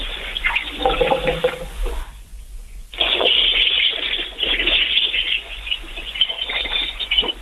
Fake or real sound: fake